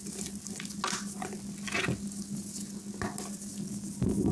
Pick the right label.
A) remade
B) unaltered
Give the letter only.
B